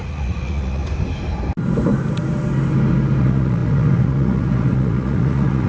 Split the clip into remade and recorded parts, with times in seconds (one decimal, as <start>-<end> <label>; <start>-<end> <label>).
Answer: 0.0-0.8 remade; 0.8-3.2 recorded; 3.2-5.7 remade